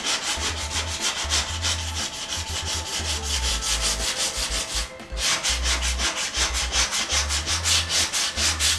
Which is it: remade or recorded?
recorded